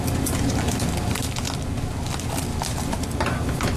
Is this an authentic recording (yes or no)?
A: yes